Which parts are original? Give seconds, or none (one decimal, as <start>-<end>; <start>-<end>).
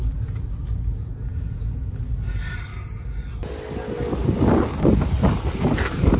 0.0-0.9; 2.0-6.2